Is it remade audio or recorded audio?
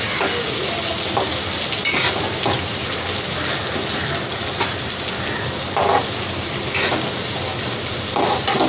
recorded